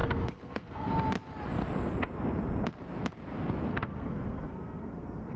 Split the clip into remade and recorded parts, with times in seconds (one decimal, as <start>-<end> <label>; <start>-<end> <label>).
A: 0.0-0.9 remade; 0.9-3.7 recorded; 3.7-5.4 remade